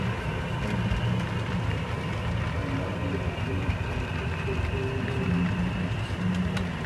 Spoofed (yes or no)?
no